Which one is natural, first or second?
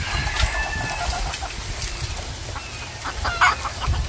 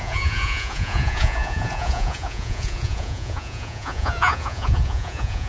first